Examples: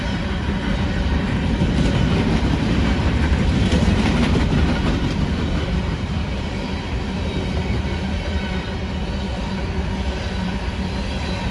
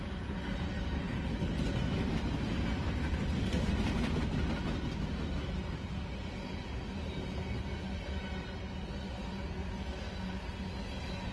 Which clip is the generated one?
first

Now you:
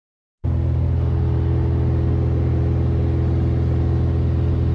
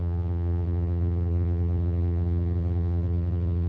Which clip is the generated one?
second